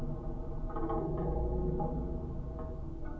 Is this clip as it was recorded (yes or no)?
yes